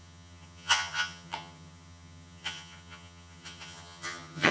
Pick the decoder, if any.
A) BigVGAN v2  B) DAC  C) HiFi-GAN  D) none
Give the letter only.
C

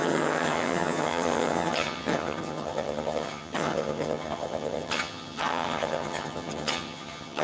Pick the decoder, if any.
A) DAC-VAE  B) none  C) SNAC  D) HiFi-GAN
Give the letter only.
D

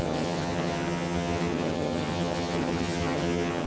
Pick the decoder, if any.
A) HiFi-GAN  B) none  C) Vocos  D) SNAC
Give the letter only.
A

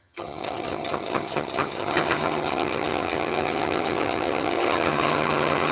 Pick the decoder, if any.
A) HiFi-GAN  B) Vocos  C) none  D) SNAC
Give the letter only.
A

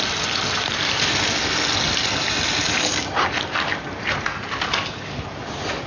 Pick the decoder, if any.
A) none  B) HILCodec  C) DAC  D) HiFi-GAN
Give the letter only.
A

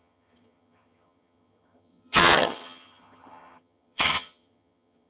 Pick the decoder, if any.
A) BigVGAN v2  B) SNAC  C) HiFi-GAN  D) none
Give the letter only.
C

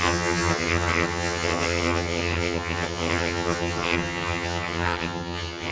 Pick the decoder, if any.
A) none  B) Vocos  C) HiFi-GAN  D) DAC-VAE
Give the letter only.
C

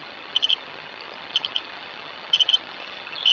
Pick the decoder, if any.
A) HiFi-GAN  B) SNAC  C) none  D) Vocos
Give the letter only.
A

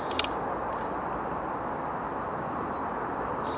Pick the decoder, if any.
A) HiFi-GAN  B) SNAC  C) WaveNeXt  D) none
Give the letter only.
D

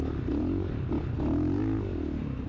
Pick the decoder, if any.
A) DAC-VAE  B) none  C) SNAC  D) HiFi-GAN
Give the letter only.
B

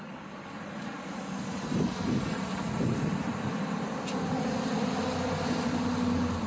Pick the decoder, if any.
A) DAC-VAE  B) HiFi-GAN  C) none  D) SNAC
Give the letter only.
C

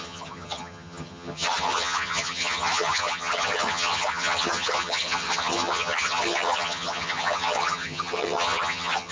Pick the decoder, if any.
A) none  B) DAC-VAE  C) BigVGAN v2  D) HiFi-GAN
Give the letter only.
D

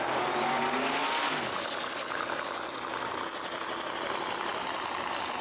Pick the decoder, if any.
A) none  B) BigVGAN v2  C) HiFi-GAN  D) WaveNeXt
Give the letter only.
A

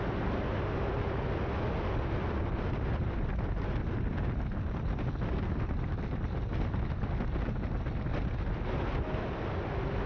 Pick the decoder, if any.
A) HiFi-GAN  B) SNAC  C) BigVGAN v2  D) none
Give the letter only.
D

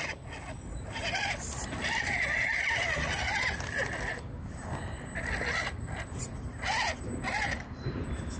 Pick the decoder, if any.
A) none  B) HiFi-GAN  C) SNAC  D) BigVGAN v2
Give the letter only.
A